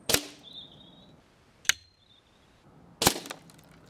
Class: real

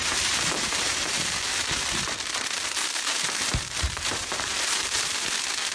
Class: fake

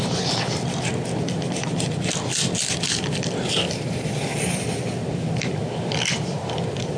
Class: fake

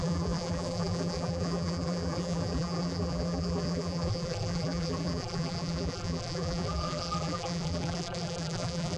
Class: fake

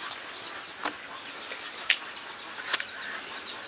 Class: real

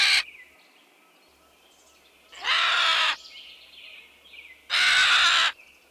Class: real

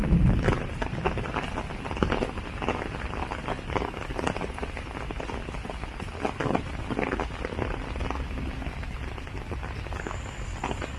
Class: real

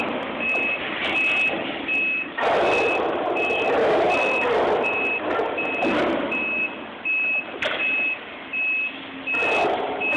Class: real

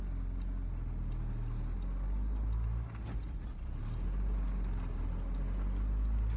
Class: real